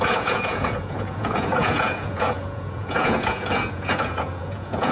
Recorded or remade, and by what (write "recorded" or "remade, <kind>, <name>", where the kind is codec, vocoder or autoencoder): remade, vocoder, Vocos